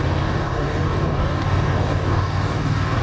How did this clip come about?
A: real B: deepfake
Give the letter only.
B